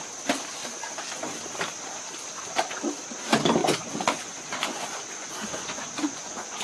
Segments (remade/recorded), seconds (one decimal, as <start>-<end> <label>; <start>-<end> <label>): 0.0-3.6 recorded; 3.6-6.6 remade